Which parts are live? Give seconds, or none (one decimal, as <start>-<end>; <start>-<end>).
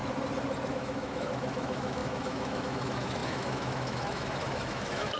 0.0-0.7